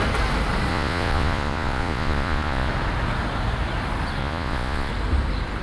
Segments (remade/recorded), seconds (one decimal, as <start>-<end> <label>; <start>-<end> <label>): 0.0-0.7 recorded; 0.7-2.7 remade; 2.7-4.2 recorded; 4.2-4.9 remade; 4.9-5.6 recorded